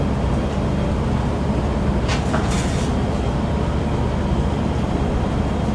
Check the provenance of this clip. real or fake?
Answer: real